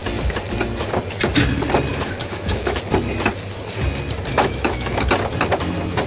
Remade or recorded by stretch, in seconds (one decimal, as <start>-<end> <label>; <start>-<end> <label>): 0.0-1.9 recorded; 1.9-2.8 remade; 2.8-4.3 recorded; 4.3-5.0 remade; 5.0-6.1 recorded